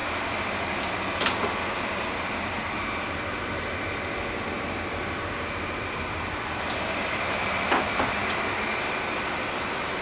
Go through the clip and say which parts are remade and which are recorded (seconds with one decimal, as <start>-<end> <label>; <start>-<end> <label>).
0.0-10.0 recorded